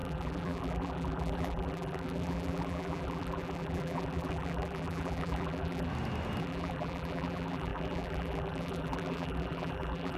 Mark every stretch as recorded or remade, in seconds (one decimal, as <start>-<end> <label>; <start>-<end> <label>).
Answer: 0.0-5.9 remade; 5.9-6.4 recorded; 6.4-10.2 remade